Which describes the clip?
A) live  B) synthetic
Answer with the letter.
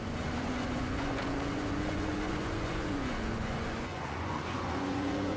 B